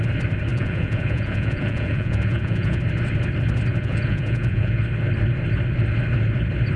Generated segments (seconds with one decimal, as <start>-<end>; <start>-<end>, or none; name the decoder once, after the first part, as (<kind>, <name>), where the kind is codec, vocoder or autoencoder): 0.5-2.8 (vocoder, Vocos); 3.7-4.8

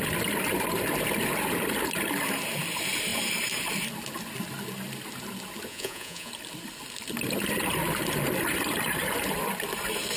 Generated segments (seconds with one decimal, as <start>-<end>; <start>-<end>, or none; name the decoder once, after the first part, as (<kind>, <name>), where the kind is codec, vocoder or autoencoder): 5.7-6.3 (vocoder, Vocos)

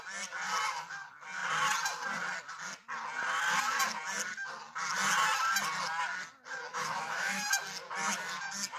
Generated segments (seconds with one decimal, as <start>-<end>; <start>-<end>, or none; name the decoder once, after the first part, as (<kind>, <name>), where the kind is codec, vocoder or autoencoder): 6.7-7.4 (autoencoder, DAC-VAE)